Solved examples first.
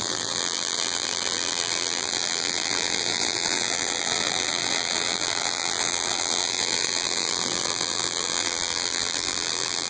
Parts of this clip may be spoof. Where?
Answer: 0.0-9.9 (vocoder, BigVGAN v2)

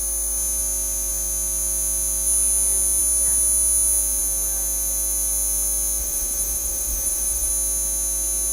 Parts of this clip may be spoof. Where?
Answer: 6.0-7.5 (vocoder, Vocos)

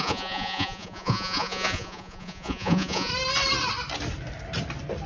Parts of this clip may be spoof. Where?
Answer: 0.0-3.1 (vocoder, Vocos)

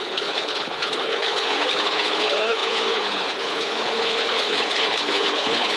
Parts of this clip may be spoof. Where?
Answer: 0.0-5.8 (codec, HILCodec)

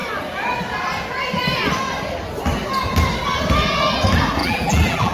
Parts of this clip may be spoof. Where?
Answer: 4.4-5.1 (vocoder, BigVGAN v2)

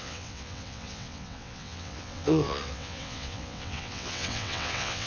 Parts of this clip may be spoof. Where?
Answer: 0.0-5.1 (vocoder, WaveNeXt)